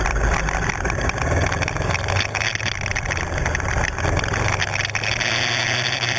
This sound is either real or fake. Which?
real